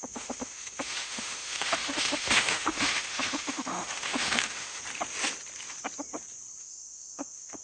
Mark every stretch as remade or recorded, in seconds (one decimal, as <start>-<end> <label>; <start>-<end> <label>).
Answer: 0.0-4.8 remade; 4.8-6.6 recorded; 6.6-7.6 remade